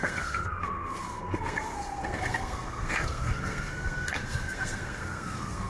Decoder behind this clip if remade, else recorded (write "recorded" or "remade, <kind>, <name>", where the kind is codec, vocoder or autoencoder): remade, codec, SNAC